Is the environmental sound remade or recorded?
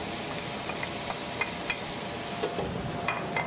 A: recorded